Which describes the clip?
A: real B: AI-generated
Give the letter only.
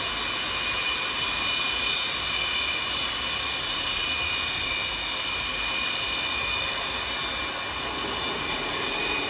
A